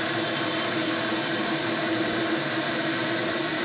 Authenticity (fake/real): fake